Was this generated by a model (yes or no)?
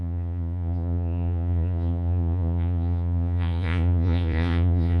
yes